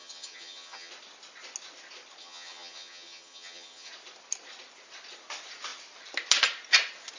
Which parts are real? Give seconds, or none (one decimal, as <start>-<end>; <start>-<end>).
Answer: 0.9-2.2; 3.9-7.2